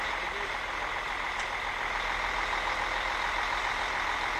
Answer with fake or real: real